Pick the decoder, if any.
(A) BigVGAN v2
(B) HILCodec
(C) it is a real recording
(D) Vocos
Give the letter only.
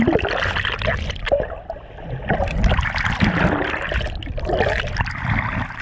C